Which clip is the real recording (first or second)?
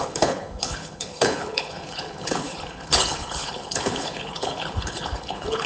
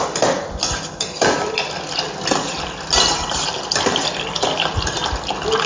second